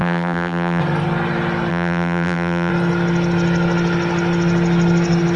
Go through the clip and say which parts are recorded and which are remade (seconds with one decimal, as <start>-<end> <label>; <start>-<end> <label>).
0.0-0.8 remade; 0.8-1.7 recorded; 1.7-2.7 remade; 2.7-5.4 recorded